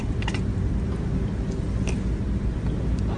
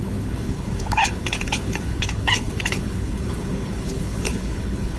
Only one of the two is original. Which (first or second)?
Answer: first